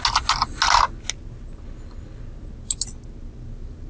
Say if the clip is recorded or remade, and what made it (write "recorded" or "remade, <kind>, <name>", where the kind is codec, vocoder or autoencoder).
recorded